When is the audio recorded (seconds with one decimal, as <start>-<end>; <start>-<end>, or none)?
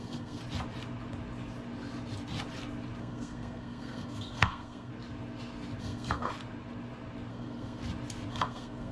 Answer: 0.4-3.0; 4.9-5.8; 6.3-7.3; 7.8-8.3